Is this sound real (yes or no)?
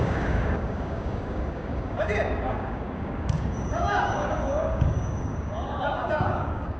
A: no